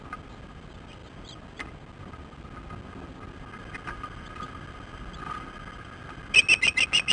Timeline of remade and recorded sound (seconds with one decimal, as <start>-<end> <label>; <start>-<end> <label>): 0.0-7.1 recorded